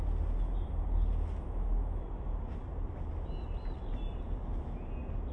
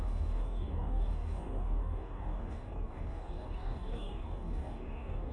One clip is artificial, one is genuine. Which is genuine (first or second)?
first